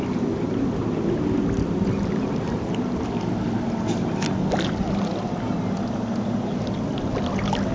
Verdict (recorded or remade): recorded